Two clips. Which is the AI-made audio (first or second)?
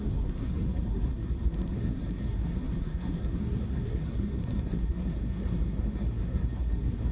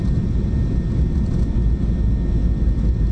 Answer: first